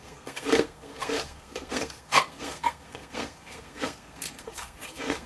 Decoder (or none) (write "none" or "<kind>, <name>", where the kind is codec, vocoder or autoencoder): codec, SNAC